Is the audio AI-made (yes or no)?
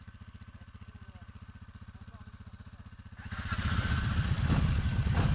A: no